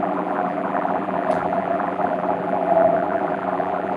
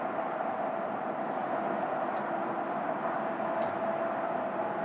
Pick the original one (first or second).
second